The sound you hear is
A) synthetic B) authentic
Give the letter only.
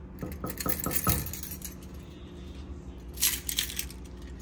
B